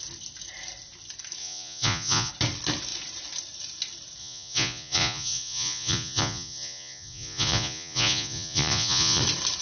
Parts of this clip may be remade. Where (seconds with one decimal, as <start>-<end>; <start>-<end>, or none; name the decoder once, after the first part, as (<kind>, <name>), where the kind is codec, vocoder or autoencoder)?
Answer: 1.4-2.3 (vocoder, Vocos); 4.2-9.2